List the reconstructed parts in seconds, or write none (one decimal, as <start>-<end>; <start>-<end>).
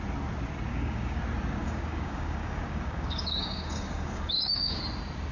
0.7-1.2; 1.6-4.8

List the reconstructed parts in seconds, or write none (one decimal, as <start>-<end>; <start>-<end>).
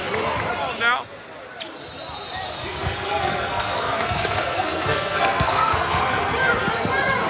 2.6-6.2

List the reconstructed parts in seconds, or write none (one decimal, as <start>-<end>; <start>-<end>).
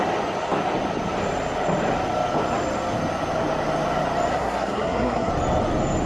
4.3-5.3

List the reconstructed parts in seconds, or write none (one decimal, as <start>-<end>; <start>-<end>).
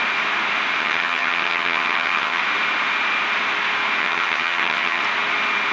0.8-2.4; 4.0-5.0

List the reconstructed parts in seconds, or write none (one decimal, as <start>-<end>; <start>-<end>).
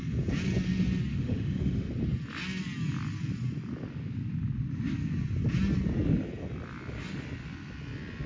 1.1-1.9